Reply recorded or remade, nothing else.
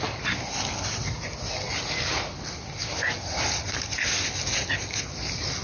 recorded